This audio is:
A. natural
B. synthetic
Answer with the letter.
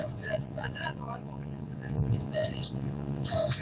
B